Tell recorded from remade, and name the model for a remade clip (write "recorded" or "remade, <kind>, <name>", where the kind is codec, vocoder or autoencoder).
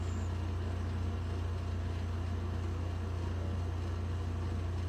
recorded